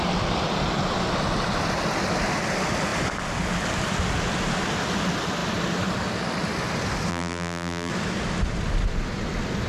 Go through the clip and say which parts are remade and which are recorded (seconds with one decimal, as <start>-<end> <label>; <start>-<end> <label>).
0.0-7.1 recorded; 7.1-7.9 remade; 7.9-9.7 recorded